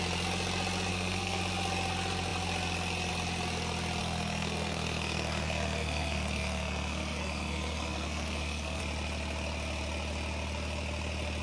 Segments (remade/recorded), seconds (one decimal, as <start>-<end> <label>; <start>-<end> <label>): 0.0-0.9 recorded; 0.9-1.4 remade; 1.4-4.0 recorded; 4.0-8.8 remade; 8.8-11.4 recorded